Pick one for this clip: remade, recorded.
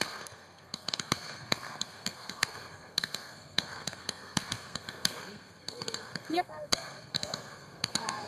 remade